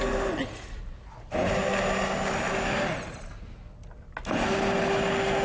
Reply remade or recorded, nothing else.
recorded